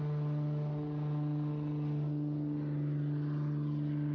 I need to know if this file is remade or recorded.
recorded